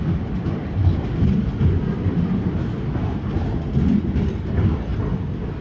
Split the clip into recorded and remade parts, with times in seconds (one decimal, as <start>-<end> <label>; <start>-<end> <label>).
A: 0.0-5.6 recorded

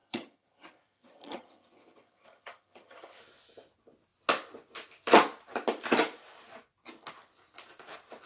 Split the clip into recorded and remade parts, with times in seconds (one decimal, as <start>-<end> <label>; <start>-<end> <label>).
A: 0.0-3.2 remade; 3.2-8.3 recorded